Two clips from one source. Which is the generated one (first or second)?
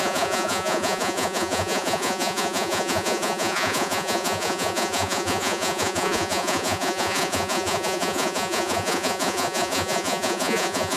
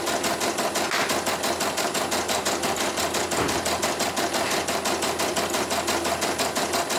first